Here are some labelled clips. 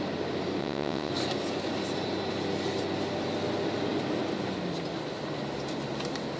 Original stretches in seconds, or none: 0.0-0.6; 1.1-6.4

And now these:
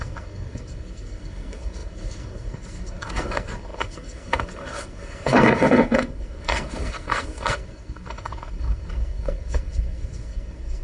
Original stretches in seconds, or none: none

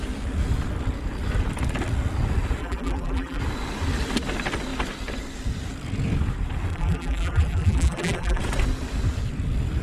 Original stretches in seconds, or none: 0.0-2.6; 3.4-6.7; 8.4-9.8

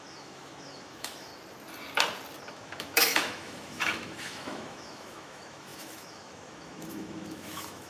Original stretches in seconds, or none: 1.3-2.5

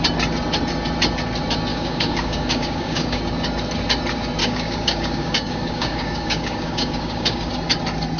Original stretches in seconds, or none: 0.0-1.7; 3.2-4.4; 7.5-8.2

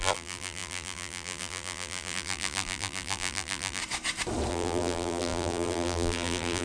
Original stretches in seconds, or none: 3.8-4.5